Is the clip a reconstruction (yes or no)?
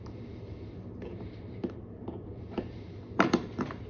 yes